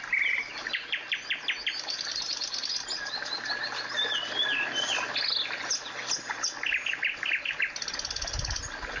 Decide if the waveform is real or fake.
real